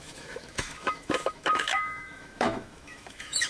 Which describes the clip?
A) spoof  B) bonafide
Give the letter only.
A